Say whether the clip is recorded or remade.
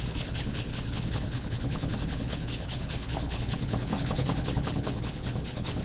remade